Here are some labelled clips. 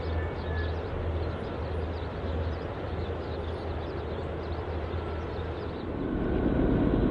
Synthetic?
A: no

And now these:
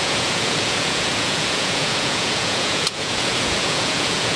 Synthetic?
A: yes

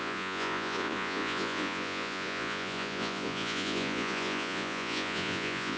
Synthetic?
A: yes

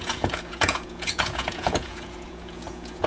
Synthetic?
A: yes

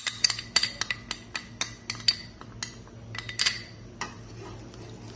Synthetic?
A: no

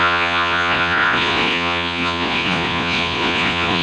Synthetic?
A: yes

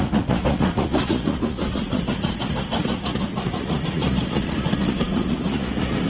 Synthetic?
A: yes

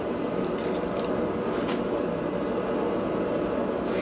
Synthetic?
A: no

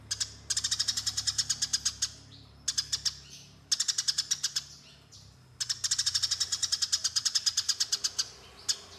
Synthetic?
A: no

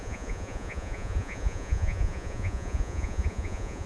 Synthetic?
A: yes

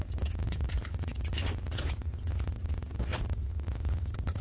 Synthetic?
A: yes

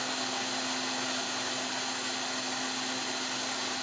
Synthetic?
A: no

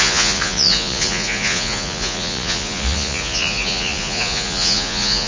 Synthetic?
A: yes